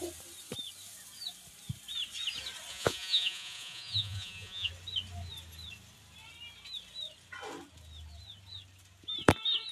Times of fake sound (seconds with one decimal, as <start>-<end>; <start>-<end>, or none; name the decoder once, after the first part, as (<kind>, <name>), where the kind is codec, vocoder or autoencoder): 2.7-4.7 (vocoder, Vocos)